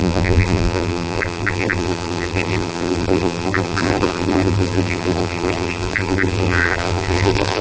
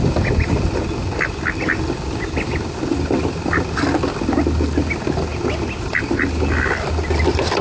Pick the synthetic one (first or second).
first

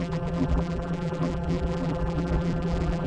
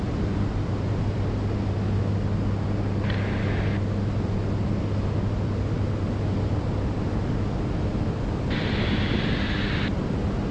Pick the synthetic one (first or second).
first